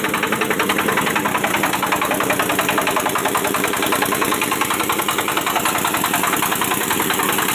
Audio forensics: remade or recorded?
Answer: recorded